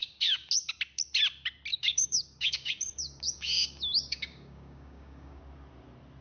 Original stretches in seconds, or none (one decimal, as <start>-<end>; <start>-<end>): 0.5-1.7; 5.4-6.2